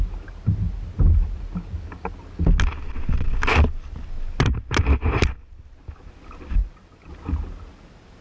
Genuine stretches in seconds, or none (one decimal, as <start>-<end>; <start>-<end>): 0.0-6.6; 7.1-8.2